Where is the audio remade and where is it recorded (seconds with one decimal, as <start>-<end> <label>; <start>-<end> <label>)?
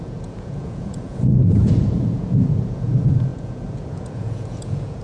0.0-5.0 remade